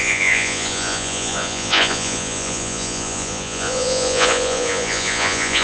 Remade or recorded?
remade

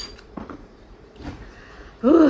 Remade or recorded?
remade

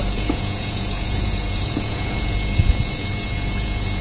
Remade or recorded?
remade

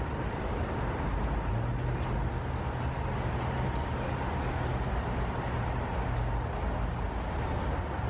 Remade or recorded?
recorded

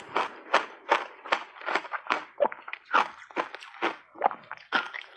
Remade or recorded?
recorded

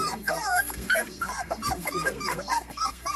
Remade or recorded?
remade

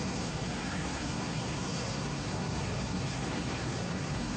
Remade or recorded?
remade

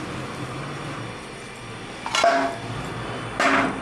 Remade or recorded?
recorded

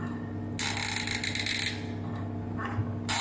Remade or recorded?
recorded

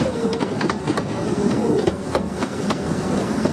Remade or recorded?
remade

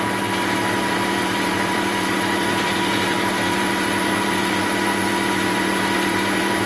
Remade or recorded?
remade